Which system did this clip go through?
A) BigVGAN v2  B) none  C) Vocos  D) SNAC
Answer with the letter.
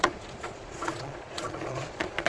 C